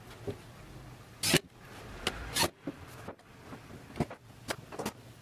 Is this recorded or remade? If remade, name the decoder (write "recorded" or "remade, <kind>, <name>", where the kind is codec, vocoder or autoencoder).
recorded